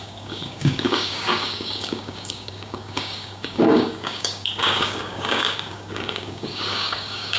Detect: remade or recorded remade